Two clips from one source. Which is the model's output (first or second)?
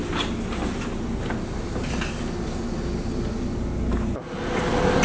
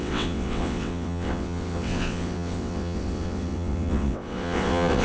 second